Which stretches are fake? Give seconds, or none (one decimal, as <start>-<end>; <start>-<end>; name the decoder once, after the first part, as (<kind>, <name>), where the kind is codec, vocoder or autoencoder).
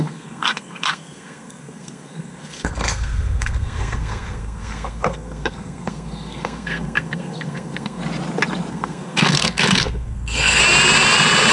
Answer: 0.0-8.0 (codec, SNAC); 8.7-10.6